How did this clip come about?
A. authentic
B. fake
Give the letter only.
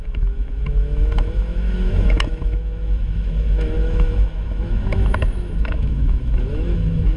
B